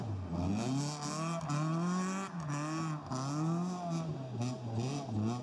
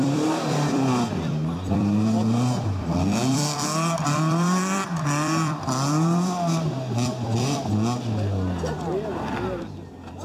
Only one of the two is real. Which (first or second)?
first